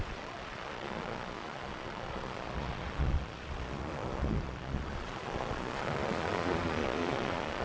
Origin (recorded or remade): remade